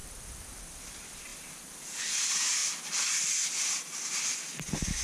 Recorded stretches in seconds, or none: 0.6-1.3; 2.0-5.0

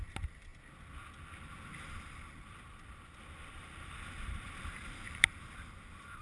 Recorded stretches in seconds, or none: 0.5-1.7

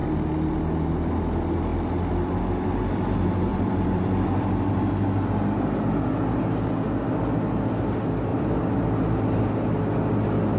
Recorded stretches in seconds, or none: 0.0-1.7; 2.3-3.5; 5.3-8.3; 9.0-10.6

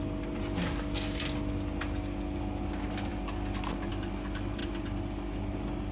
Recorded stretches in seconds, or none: 0.0-5.9

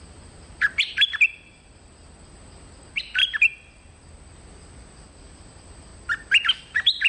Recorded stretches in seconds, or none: 3.2-5.1; 5.9-6.6

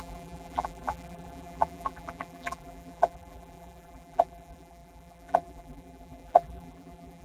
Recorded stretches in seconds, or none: none

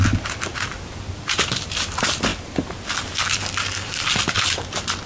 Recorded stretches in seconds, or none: none